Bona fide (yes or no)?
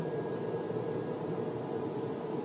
yes